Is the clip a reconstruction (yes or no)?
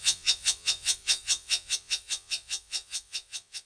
yes